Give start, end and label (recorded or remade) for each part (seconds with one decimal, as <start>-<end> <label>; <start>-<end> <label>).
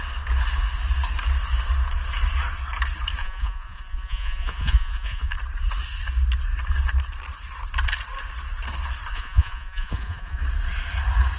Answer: 0.0-3.2 recorded; 3.2-5.3 remade; 5.3-9.1 recorded; 9.1-10.4 remade; 10.4-11.4 recorded